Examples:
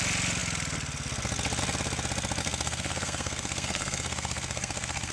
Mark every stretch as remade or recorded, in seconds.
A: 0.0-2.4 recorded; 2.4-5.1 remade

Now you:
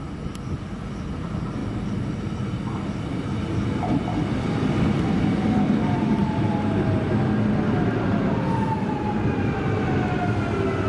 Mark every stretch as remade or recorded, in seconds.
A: 0.0-10.9 recorded

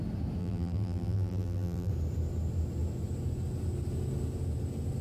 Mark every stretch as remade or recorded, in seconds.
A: 0.0-0.4 recorded; 0.4-1.9 remade; 1.9-5.0 recorded

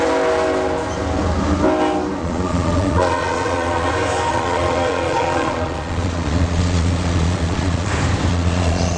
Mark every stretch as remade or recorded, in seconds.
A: 0.0-2.2 recorded; 2.2-3.9 remade; 3.9-4.3 recorded; 4.3-7.9 remade; 7.9-8.3 recorded; 8.3-9.0 remade

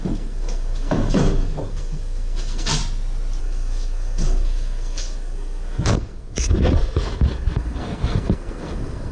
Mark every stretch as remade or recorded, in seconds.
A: 0.0-2.8 remade; 2.8-3.4 recorded; 3.4-9.1 remade

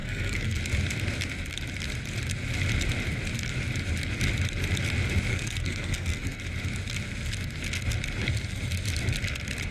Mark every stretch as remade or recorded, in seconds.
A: 0.0-0.6 remade; 0.6-5.3 recorded; 5.3-6.4 remade; 6.4-9.7 recorded